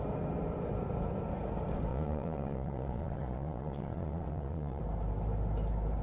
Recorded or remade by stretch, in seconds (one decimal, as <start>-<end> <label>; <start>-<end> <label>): 0.0-1.9 recorded; 1.9-4.8 remade; 4.8-6.0 recorded